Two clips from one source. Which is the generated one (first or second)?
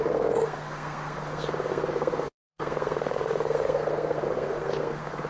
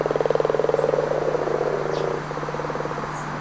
first